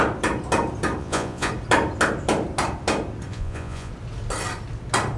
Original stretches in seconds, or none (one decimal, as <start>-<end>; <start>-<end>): 0.0-1.0; 1.5-3.3; 3.9-5.2